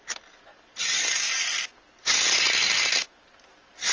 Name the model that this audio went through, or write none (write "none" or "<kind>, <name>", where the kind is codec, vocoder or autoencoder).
none